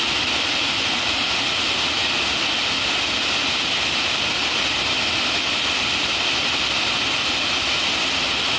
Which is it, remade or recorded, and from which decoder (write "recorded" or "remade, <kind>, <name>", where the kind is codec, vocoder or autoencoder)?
recorded